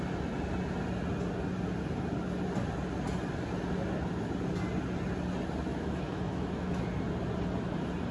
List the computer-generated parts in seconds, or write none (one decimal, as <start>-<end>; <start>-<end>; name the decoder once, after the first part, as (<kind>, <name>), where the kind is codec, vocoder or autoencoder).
5.7-6.8 (autoencoder, DAC-VAE)